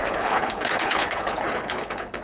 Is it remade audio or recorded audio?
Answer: remade